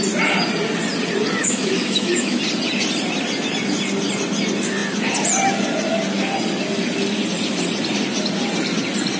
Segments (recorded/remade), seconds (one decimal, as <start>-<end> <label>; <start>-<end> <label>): 0.0-1.4 recorded; 1.4-2.4 remade; 2.4-9.2 recorded